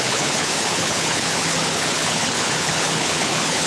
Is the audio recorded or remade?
remade